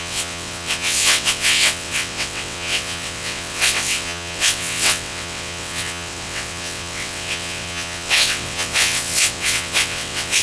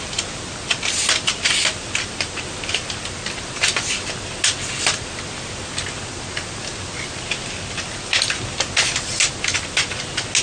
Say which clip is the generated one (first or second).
first